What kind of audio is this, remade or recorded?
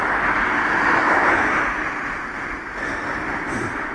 recorded